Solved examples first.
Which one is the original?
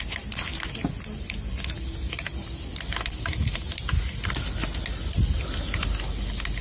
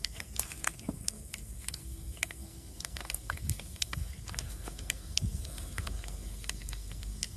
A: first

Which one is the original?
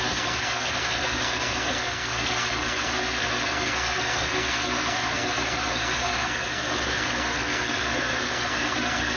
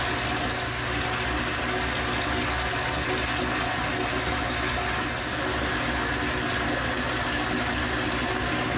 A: second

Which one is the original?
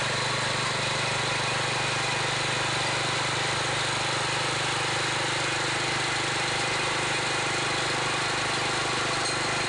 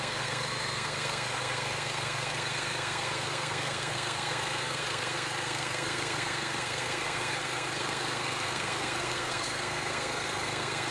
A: first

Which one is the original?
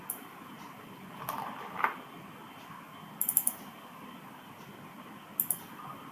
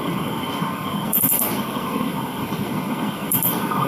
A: first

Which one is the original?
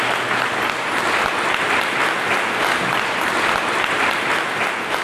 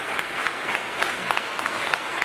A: first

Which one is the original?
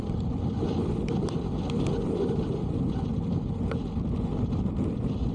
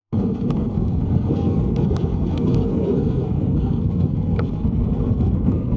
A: first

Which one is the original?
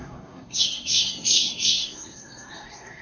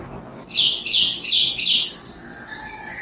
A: second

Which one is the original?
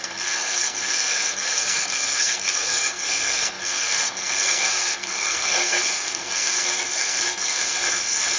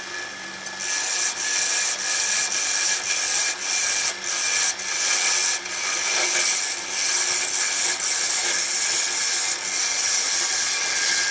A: second